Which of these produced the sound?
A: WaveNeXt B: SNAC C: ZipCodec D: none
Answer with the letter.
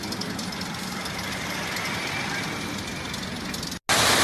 D